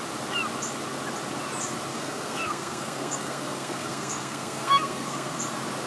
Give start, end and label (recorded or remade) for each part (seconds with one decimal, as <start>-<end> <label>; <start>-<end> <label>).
0.0-1.9 recorded; 1.9-5.4 remade; 5.4-5.9 recorded